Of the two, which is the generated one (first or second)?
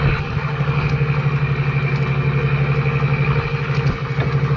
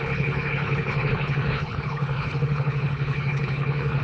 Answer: second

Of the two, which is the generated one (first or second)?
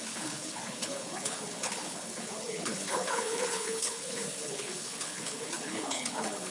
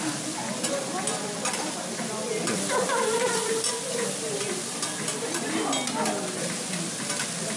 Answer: first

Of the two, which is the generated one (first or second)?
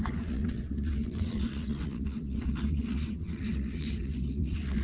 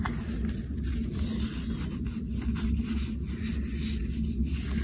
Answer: first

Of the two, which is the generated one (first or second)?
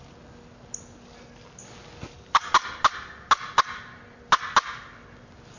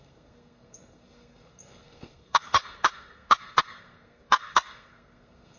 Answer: second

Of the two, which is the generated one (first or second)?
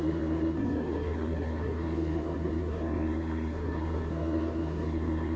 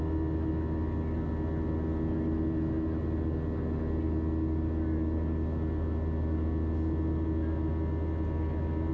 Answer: first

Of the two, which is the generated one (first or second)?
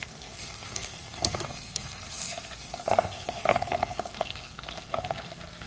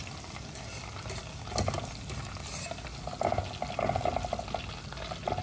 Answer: first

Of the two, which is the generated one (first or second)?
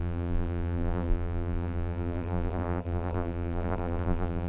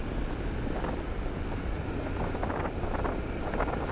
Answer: first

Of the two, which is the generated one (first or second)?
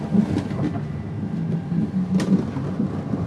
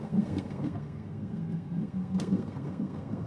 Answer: second